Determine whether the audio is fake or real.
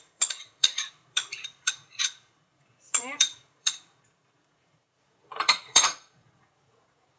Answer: fake